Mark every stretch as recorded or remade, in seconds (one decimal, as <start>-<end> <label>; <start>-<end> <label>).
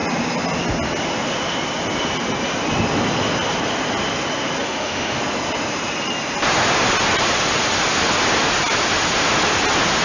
0.0-4.6 recorded; 4.6-5.2 remade; 5.2-10.0 recorded